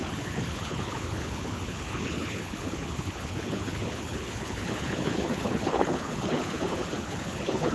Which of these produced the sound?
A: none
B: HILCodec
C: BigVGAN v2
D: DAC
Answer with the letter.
B